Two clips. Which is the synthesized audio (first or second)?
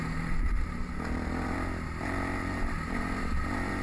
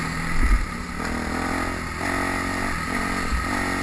first